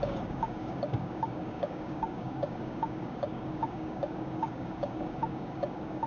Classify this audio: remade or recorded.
remade